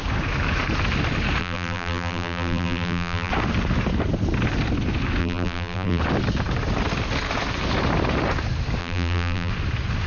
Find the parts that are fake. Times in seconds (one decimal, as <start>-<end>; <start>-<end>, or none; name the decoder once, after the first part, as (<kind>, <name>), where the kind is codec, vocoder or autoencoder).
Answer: 1.4-3.3 (vocoder, BigVGAN v2); 5.2-6.0; 8.8-9.5